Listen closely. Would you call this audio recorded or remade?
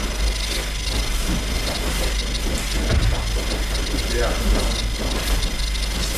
recorded